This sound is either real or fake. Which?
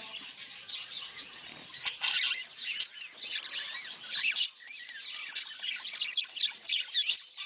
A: real